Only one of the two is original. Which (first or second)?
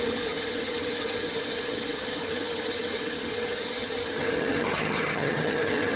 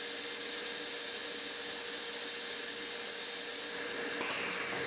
second